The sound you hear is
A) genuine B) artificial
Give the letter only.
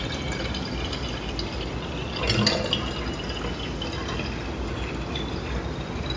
A